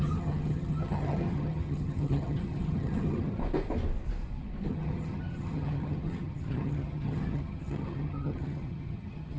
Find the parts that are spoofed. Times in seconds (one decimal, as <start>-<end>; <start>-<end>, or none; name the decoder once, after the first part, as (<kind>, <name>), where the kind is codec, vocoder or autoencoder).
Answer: 0.0-3.4 (vocoder, HiFi-GAN); 4.7-9.4